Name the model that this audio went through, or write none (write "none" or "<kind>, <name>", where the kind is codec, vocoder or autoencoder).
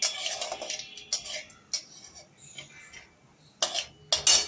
none